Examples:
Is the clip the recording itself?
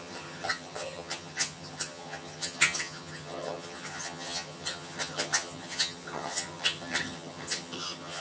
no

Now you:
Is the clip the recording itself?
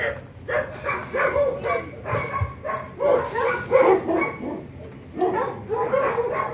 yes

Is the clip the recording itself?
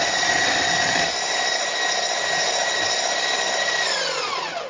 yes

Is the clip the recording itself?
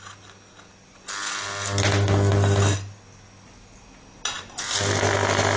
yes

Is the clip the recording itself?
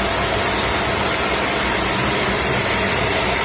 yes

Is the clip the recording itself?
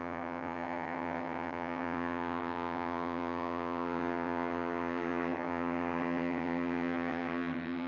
no